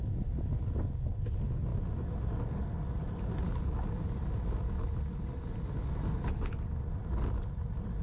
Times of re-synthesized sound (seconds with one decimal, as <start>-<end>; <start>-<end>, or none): none